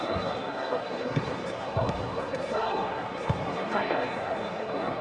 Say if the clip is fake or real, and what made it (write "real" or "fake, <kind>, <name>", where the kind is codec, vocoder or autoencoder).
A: fake, codec, SNAC